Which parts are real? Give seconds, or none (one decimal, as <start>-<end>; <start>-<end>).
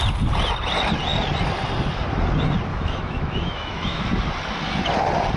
0.0-2.7; 4.1-5.4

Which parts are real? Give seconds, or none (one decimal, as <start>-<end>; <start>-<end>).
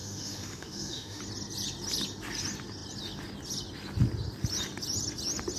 1.2-5.6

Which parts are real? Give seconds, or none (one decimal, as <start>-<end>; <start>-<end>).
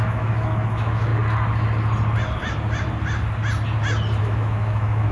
1.1-4.2